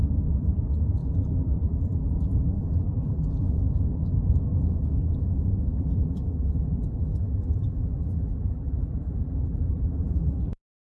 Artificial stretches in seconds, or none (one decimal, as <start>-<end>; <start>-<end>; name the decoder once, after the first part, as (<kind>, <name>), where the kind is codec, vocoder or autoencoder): 1.0-3.5 (vocoder, BigVGAN v2); 5.7-11.0